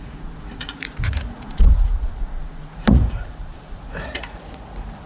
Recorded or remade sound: remade